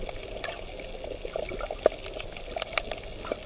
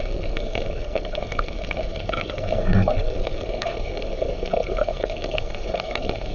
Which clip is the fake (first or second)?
second